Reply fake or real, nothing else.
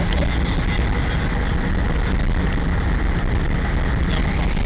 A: real